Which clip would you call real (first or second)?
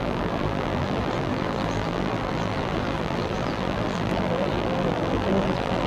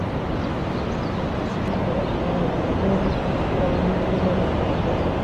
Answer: second